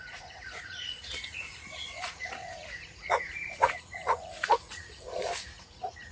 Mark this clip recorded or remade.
remade